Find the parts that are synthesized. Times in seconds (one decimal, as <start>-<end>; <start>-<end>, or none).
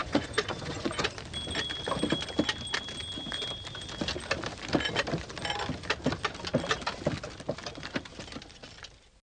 0.0-1.1